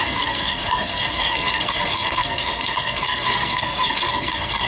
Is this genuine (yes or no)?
no